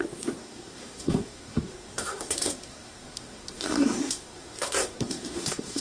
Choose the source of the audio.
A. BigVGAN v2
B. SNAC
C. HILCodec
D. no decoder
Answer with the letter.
B